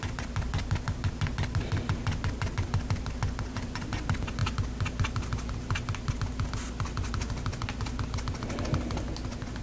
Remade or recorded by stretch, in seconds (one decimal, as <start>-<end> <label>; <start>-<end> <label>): 0.0-9.6 recorded